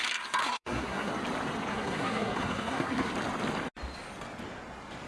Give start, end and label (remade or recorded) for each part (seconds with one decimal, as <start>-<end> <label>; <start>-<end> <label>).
0.0-0.4 recorded; 0.4-1.1 remade; 1.1-1.7 recorded; 1.7-3.1 remade; 3.1-5.1 recorded